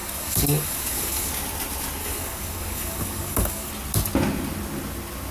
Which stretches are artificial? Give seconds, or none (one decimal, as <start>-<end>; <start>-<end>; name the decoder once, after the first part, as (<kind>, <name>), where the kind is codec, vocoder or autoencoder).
0.0-1.3 (codec, DAC); 2.0-3.7